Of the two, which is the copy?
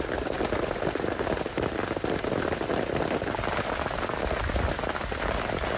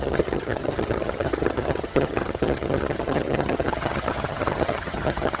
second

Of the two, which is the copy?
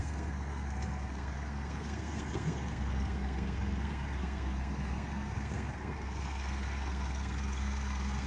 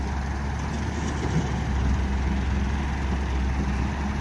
first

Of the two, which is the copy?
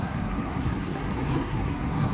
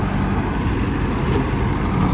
first